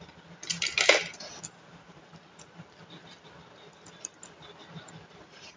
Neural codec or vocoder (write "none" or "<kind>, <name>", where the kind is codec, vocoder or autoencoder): none